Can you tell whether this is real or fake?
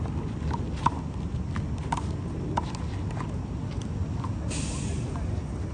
real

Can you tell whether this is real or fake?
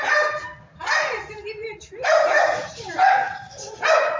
fake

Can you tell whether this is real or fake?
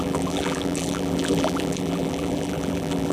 fake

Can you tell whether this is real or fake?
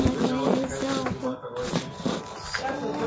real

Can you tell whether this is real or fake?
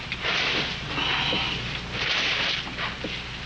real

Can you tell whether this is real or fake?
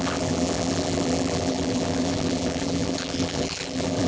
fake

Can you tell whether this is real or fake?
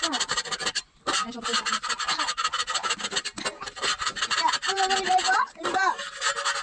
real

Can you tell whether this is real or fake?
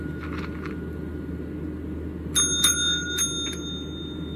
real